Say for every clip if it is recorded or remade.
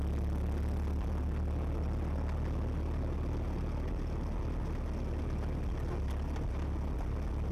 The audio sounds recorded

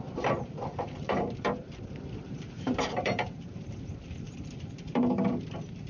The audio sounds remade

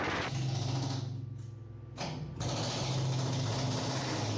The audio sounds recorded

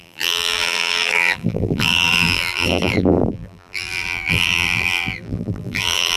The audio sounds remade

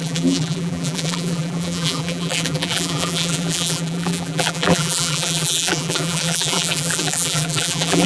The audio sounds remade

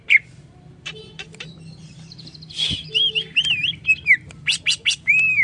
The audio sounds remade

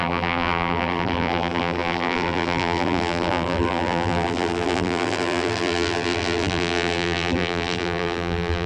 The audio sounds remade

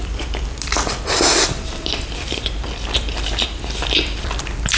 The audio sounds remade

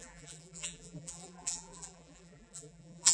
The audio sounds remade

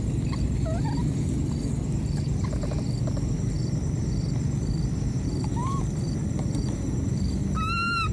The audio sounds recorded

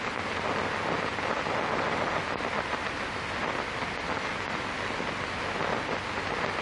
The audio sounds recorded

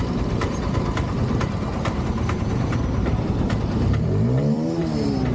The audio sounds remade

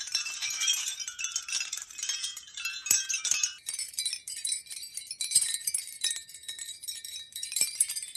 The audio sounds remade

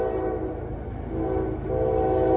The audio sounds recorded